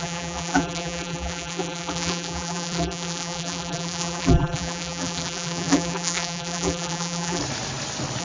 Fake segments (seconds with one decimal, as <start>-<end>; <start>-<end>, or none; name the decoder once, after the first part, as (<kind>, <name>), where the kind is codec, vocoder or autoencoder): 0.0-7.4 (vocoder, BigVGAN v2)